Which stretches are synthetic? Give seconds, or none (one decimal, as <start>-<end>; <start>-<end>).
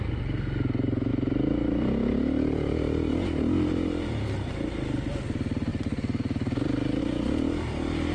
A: 1.1-2.8; 5.7-7.0